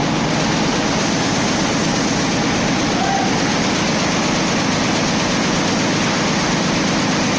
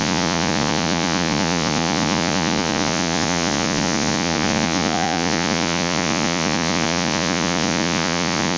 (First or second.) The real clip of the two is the first